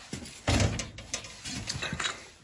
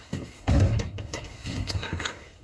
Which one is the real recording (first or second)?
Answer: first